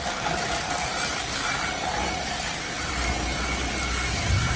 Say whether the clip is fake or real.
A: real